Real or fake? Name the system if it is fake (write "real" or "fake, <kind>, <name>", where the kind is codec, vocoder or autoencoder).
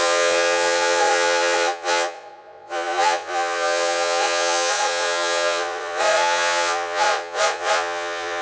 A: fake, vocoder, Vocos